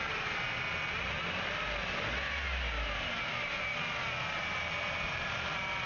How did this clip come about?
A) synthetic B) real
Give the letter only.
B